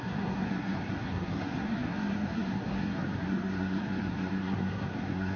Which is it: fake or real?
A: fake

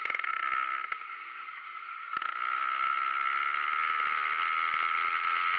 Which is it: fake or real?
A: real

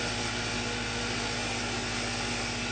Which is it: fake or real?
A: real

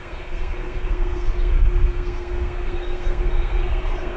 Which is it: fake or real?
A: fake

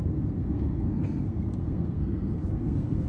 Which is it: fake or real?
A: fake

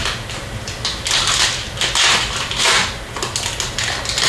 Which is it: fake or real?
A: real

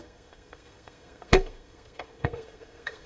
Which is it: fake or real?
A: fake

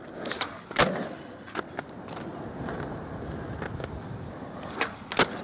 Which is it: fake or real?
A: real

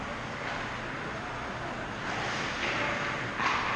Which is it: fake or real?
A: real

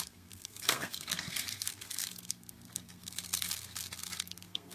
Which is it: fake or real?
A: fake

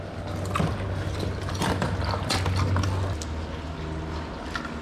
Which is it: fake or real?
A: real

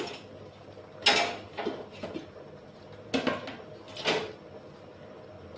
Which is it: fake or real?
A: real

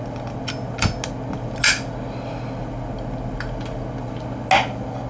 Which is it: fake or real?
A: real